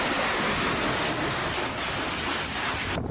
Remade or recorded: recorded